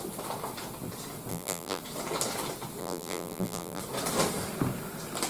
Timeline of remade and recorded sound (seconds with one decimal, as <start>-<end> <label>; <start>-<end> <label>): 0.0-1.3 recorded; 1.3-1.8 remade; 1.8-2.8 recorded; 2.8-3.8 remade; 3.8-5.3 recorded